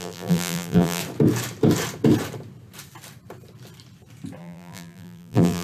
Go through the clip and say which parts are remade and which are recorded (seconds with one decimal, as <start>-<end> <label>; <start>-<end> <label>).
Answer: 0.0-1.0 remade; 1.0-4.4 recorded; 4.4-5.6 remade